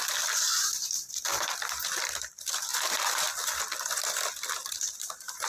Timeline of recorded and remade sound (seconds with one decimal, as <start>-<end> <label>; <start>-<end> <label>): 0.0-0.5 remade; 0.5-1.5 recorded; 1.5-2.7 remade; 2.7-4.5 recorded; 4.5-5.5 remade